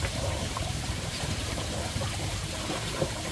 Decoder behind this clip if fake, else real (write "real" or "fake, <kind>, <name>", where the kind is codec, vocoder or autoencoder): fake, vocoder, BigVGAN v2